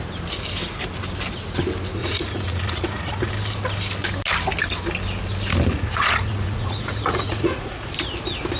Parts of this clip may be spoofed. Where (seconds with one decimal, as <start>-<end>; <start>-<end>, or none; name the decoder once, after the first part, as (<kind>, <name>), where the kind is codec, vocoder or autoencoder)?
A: 2.0-3.3 (vocoder, Vocos); 5.7-7.9